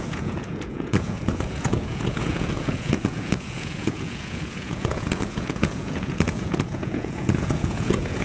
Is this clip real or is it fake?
fake